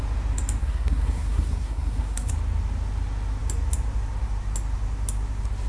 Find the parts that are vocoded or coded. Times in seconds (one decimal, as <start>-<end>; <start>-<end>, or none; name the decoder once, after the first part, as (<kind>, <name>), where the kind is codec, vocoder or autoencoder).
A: 0.6-2.3 (codec, SNAC)

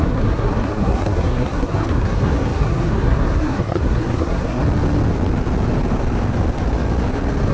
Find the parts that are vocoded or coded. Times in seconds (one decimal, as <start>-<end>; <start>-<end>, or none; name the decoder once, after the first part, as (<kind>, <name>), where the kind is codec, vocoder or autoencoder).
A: 0.0-4.6 (codec, SNAC)

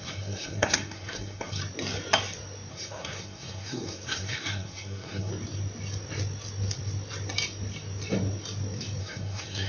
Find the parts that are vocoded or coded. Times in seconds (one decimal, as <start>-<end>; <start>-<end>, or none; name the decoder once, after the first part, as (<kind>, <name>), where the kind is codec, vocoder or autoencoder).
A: 0.0-1.6 (codec, SNAC); 2.7-5.3; 9.0-9.7

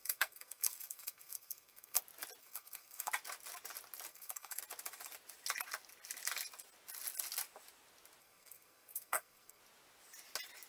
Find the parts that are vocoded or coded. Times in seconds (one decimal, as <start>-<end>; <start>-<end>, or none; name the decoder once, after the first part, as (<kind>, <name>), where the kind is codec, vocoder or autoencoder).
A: 0.0-2.0 (codec, SNAC); 2.4-3.1; 4.1-4.6; 8.2-9.6

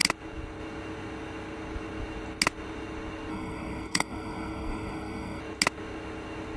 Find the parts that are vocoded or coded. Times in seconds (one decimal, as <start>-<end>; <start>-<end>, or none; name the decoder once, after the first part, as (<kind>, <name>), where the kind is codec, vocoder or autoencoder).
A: 3.3-5.4 (codec, SNAC)

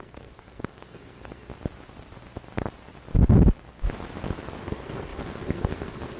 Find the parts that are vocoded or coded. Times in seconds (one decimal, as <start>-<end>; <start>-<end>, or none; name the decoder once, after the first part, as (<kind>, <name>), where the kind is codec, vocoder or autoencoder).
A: 0.0-1.5 (codec, SNAC); 4.6-6.2

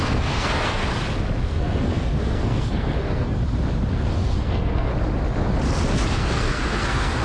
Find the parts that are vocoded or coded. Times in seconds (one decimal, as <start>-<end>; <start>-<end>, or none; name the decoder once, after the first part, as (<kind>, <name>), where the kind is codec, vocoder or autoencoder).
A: 0.0-0.8 (codec, SNAC); 1.4-3.4; 3.9-4.9; 6.1-7.2